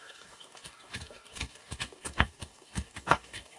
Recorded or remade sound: remade